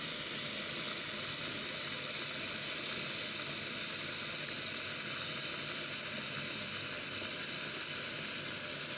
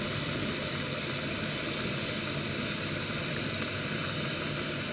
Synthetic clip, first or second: second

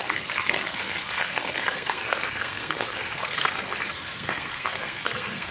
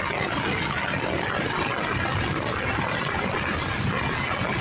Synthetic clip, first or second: first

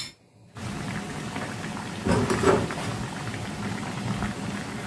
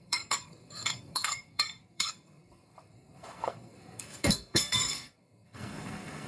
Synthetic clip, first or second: second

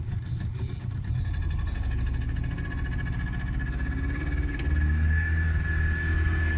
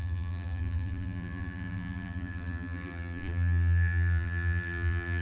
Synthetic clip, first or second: second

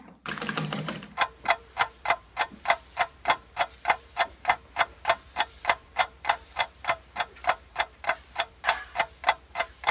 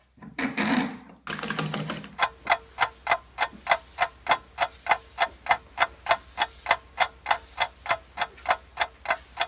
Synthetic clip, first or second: first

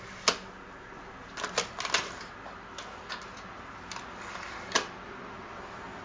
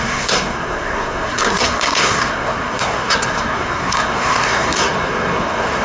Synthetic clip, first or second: second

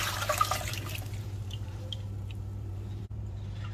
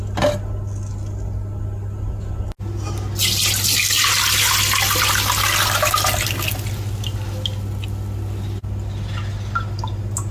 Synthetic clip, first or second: first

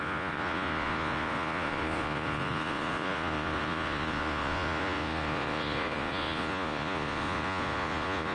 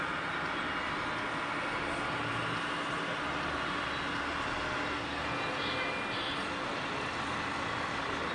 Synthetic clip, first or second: first